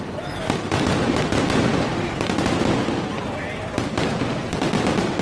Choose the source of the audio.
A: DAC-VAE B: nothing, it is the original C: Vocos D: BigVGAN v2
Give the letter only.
B